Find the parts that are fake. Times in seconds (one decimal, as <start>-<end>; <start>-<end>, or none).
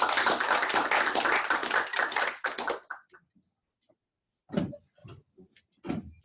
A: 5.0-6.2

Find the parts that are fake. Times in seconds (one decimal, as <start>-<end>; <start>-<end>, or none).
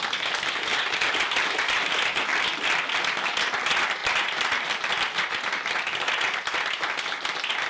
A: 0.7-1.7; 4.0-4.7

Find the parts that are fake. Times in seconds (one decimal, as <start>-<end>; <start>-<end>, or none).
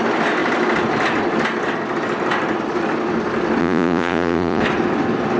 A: 3.6-4.6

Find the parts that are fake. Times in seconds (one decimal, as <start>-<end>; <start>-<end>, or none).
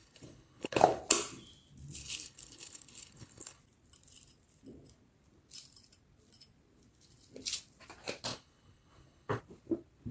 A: 0.0-1.0; 2.0-3.6; 8.3-9.4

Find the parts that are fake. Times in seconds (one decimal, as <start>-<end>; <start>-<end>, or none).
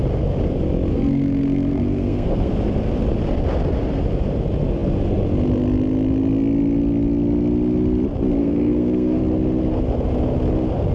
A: 0.9-2.5; 8.4-9.2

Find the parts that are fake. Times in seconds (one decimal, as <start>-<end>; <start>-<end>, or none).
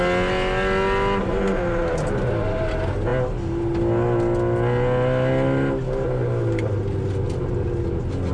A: none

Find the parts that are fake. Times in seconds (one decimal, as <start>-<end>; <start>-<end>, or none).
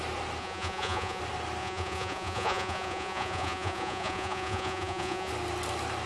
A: 0.4-1.2; 1.6-5.3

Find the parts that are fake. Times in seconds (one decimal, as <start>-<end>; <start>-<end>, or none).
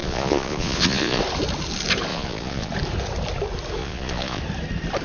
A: 0.0-1.2; 2.1-2.7; 3.8-4.4